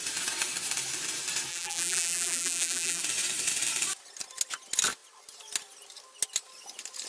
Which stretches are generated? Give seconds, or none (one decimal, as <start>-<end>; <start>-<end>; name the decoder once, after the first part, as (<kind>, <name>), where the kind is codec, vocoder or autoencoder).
1.5-3.0 (vocoder, BigVGAN v2)

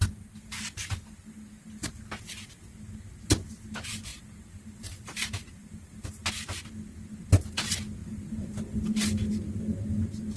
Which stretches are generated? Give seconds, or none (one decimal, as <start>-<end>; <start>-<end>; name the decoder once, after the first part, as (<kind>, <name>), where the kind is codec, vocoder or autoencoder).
4.1-6.3 (vocoder, BigVGAN v2); 8.0-8.6

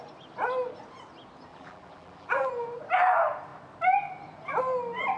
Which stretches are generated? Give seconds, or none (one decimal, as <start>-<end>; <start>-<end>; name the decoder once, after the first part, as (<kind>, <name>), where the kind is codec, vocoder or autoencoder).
1.5-2.5 (vocoder, BigVGAN v2)